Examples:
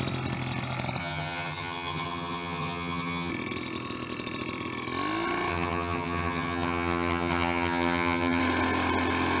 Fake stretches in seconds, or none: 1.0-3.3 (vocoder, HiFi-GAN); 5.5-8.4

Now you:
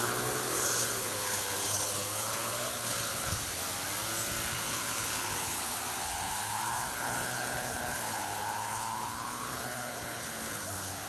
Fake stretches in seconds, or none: 0.0-3.6 (codec, HILCodec); 4.5-11.1